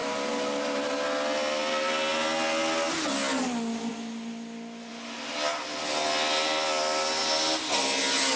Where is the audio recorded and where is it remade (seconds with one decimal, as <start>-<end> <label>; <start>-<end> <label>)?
0.0-8.4 recorded